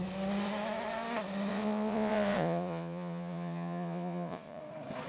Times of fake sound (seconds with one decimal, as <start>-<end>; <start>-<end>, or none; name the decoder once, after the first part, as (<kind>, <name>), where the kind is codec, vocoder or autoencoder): 1.5-4.6 (vocoder, Vocos)